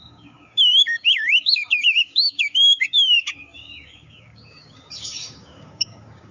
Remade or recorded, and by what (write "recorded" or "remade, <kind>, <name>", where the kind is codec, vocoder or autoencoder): remade, codec, DAC